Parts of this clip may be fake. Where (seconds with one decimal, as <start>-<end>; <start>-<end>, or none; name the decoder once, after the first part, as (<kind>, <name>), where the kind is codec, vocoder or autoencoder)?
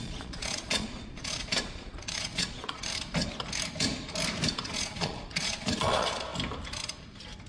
0.0-2.9 (vocoder, Vocos); 4.5-6.3